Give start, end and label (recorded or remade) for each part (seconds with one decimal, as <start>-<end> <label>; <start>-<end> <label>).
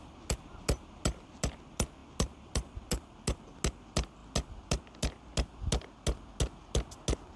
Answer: 0.0-7.4 recorded